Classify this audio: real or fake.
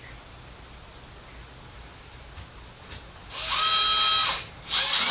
real